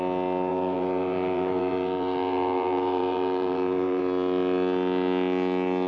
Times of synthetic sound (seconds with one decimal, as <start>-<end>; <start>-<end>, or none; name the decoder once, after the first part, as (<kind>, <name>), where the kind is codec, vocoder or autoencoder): 0.5-4.0 (vocoder, BigVGAN v2)